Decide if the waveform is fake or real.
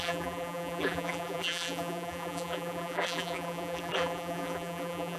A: fake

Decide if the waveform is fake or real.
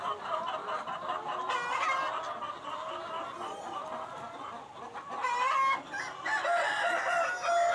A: real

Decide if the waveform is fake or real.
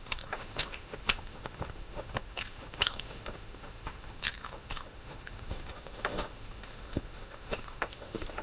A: fake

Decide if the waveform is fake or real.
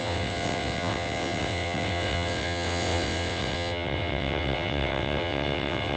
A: fake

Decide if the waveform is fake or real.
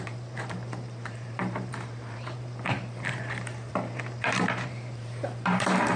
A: fake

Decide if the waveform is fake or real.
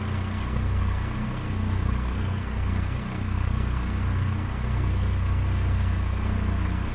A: fake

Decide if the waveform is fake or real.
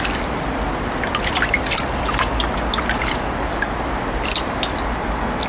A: real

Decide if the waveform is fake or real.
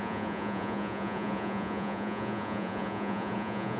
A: fake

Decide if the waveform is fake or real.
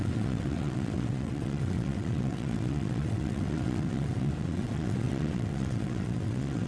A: fake